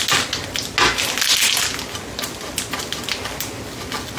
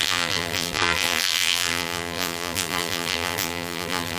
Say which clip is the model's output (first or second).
second